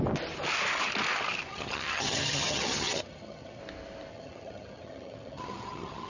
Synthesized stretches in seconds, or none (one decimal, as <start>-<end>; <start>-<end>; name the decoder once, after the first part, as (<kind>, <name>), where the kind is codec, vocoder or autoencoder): 1.5-3.6 (vocoder, HiFi-GAN); 4.1-6.1